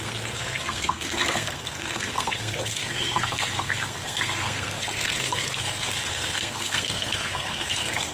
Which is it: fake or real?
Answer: fake